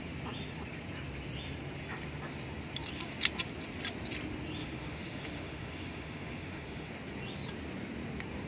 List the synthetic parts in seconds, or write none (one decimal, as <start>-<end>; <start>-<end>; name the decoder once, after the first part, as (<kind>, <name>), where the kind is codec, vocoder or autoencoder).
4.6-6.9 (autoencoder, DAC-VAE)